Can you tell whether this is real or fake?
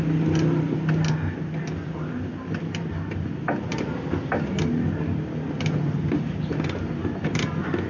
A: real